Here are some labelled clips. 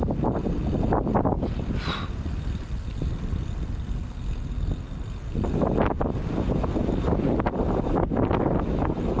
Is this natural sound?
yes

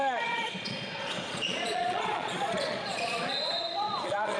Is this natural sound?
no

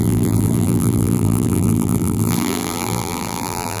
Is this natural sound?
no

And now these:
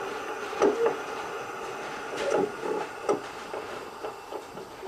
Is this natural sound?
yes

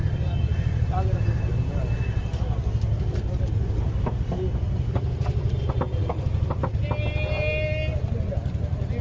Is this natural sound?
yes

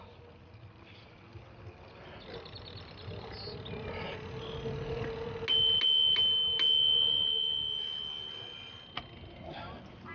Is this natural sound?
yes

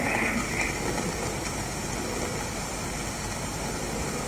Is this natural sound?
yes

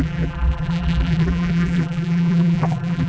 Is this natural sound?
no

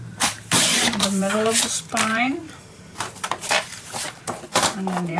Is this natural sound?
no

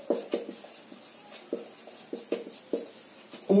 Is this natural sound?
yes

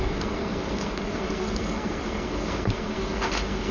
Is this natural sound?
no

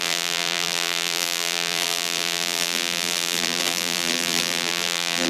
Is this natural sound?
no